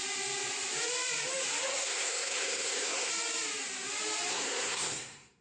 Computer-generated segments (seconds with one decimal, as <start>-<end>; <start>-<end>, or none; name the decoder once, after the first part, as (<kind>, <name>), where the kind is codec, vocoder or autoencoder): 1.7-3.1 (codec, SNAC); 4.3-5.4